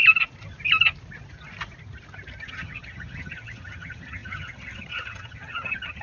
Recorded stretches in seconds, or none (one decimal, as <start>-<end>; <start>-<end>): 0.0-2.4